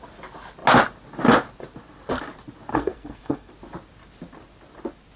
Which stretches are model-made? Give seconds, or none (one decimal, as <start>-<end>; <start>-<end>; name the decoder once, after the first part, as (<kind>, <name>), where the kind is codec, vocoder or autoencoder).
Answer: 2.7-3.5 (codec, SNAC)